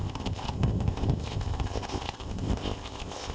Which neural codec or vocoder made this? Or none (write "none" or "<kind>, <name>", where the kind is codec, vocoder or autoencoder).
codec, ZipCodec